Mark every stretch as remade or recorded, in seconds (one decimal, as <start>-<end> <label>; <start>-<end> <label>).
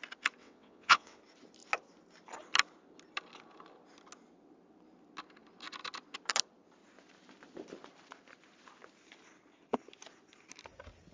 0.0-0.4 recorded; 0.4-1.2 remade; 1.2-11.1 recorded